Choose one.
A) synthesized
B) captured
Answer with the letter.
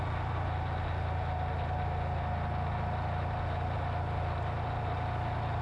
B